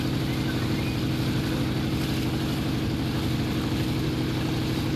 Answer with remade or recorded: recorded